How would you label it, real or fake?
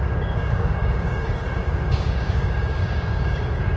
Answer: fake